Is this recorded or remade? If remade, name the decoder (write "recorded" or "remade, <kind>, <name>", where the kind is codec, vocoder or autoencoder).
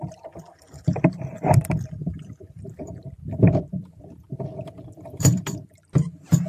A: remade, vocoder, BigVGAN v2